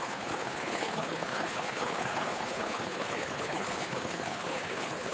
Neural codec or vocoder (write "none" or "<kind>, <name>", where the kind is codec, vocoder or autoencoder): codec, HILCodec